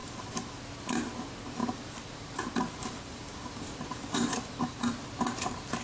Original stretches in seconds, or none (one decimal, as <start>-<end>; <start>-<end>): 0.6-1.6; 4.7-5.8